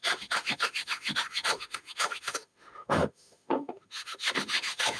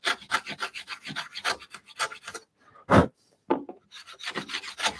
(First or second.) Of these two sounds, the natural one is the second